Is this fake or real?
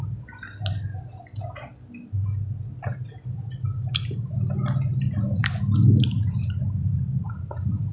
real